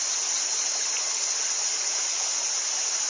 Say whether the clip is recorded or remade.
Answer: recorded